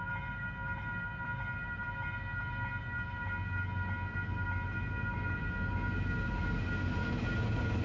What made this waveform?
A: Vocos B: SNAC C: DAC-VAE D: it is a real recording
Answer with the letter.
D